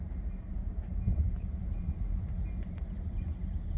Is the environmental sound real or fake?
fake